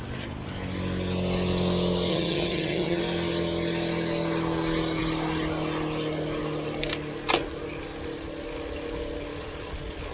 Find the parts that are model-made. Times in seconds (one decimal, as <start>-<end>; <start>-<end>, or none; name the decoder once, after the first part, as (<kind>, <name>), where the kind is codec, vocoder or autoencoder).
2.1-3.0 (vocoder, HiFi-GAN)